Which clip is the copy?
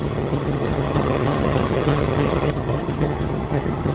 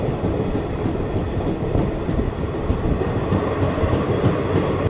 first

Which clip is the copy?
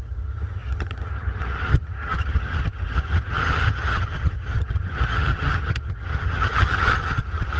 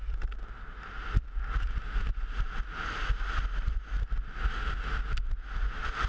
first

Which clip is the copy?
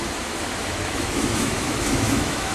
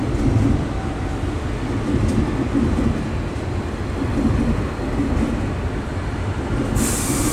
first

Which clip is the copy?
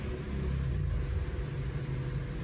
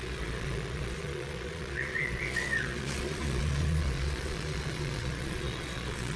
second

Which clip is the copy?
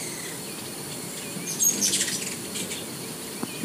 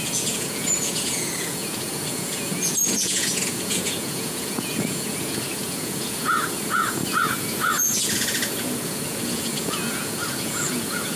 second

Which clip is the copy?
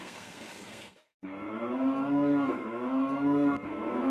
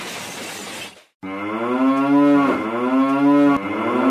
first